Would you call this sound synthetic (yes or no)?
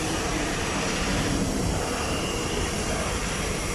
yes